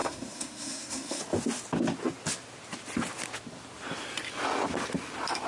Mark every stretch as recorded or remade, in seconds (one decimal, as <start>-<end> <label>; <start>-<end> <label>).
0.0-1.2 remade; 1.2-5.5 recorded